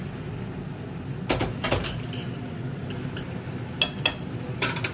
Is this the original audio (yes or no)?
yes